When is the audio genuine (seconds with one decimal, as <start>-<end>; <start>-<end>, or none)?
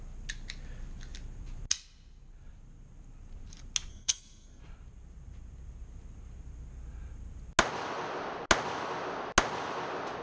0.0-3.9; 4.6-10.2